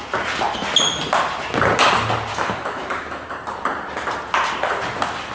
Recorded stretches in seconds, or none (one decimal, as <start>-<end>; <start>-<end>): 0.0-2.3; 3.3-5.3